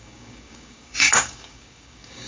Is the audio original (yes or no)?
no